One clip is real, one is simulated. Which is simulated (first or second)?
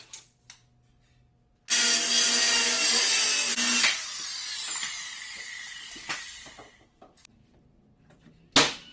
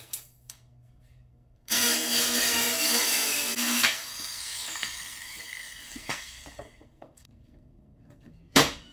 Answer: second